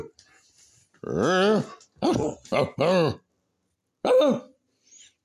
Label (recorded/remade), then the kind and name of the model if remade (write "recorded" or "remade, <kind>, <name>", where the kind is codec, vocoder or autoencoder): recorded